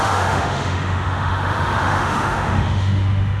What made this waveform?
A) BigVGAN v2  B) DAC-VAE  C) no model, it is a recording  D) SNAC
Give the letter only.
B